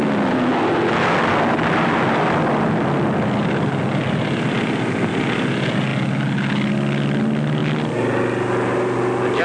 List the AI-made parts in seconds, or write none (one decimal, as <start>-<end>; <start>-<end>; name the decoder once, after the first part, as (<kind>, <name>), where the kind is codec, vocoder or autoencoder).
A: none